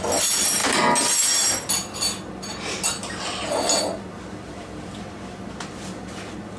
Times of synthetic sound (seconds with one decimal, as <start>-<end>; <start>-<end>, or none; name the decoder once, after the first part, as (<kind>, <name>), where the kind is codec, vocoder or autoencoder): none